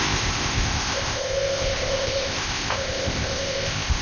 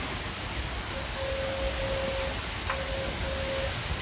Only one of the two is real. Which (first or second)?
second